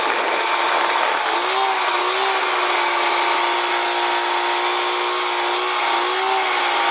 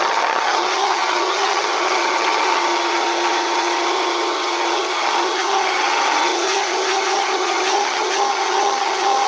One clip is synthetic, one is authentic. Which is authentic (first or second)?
first